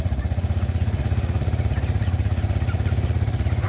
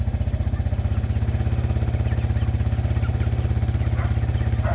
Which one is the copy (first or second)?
first